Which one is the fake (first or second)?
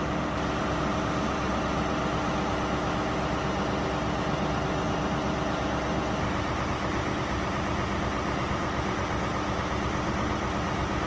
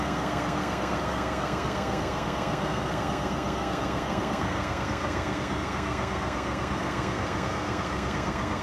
second